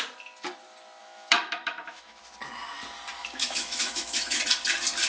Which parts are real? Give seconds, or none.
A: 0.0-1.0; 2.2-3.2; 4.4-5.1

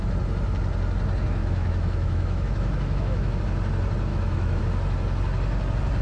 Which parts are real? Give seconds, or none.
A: 0.0-1.4; 3.4-4.1; 4.6-6.0

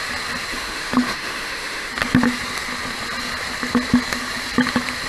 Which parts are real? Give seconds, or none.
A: 0.0-0.5; 1.9-5.1

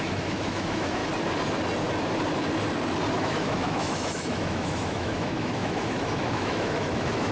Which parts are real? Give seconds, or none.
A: 1.0-3.1

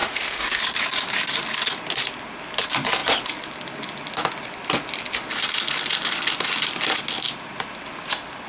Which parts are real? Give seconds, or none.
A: 0.6-8.5

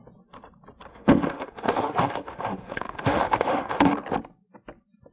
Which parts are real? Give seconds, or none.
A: 0.0-0.9; 3.9-5.1

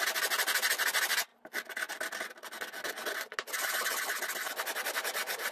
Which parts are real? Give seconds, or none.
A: 0.0-5.5